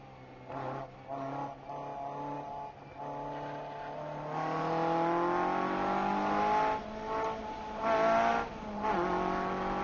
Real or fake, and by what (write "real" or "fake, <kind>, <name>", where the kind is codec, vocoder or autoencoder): real